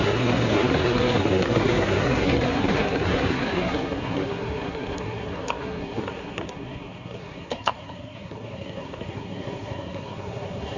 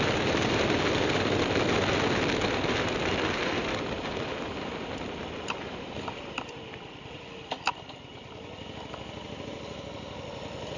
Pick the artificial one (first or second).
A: first